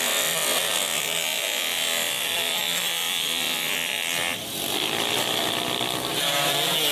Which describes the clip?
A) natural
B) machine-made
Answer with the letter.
A